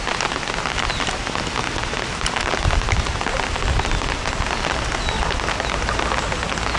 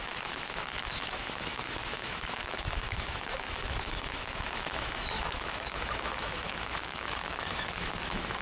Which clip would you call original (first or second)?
first